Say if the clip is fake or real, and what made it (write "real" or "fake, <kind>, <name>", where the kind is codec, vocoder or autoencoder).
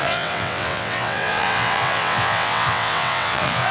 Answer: fake, vocoder, WaveNeXt